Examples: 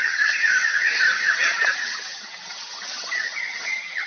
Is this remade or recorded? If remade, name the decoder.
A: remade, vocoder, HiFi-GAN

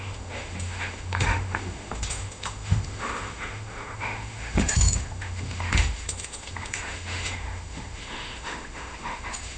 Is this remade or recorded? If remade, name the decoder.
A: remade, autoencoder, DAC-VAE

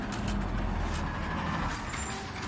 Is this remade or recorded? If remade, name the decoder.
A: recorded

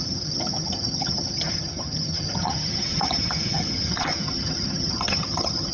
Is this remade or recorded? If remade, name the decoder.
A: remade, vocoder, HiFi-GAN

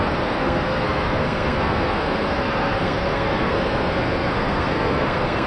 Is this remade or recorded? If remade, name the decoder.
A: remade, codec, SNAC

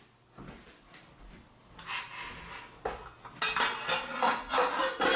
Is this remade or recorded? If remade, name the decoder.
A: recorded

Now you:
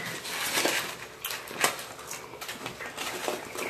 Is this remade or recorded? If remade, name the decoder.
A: recorded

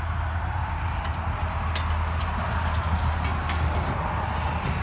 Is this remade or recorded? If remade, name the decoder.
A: recorded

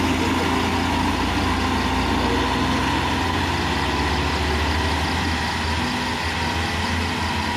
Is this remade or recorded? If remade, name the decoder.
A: recorded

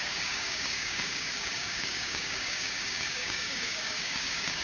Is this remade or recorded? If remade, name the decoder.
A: remade, codec, DAC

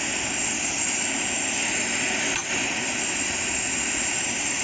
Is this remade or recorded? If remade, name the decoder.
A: recorded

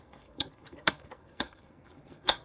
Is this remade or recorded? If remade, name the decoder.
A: remade, codec, SNAC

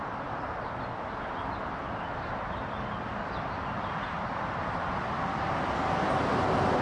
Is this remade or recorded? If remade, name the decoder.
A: recorded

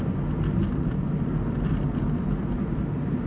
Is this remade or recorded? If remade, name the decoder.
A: recorded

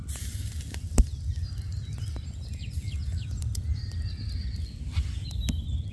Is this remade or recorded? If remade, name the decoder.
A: recorded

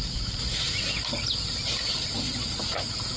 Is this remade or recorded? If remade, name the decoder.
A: recorded